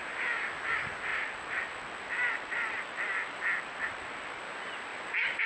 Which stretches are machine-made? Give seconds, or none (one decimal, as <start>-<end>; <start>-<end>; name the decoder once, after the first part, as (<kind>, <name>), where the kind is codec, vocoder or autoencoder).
1.1-4.4 (vocoder, BigVGAN v2); 4.9-5.5